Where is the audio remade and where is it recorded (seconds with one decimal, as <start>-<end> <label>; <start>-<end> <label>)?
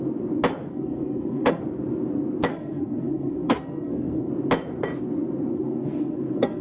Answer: 0.0-0.7 recorded; 0.7-1.6 remade; 1.6-2.5 recorded; 2.5-4.3 remade; 4.3-5.5 recorded; 5.5-6.6 remade